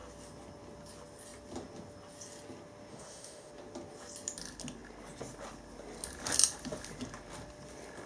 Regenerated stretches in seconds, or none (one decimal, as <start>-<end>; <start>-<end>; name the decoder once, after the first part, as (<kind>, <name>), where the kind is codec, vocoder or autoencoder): 2.9-3.5 (autoencoder, DAC-VAE)